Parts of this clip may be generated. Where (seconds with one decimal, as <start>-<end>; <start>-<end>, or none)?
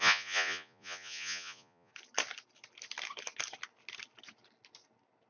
0.0-1.9